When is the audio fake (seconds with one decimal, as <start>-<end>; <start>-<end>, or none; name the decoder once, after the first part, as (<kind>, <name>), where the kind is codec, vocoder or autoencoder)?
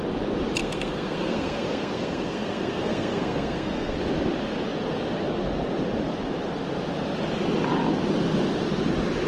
0.6-4.0 (codec, SNAC)